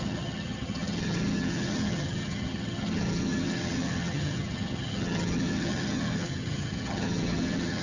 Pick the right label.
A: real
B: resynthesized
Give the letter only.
B